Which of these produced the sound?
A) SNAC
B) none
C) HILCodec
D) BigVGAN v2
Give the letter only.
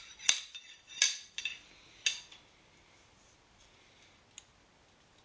B